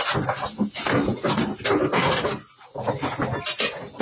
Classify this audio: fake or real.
real